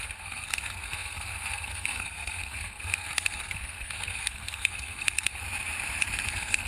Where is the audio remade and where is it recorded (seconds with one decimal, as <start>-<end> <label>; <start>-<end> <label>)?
0.0-5.4 remade; 5.4-6.3 recorded; 6.3-6.7 remade